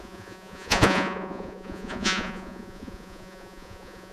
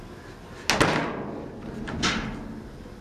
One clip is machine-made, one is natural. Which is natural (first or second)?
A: second